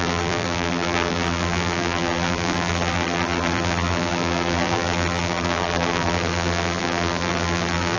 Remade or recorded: remade